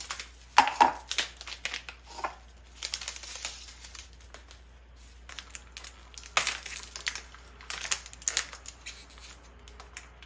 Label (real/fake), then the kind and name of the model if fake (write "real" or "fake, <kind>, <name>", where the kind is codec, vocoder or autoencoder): real